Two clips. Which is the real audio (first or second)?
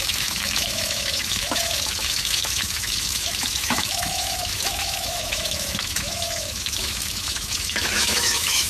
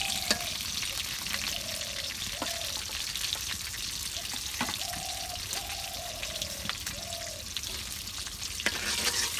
second